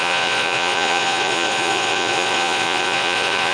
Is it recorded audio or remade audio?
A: remade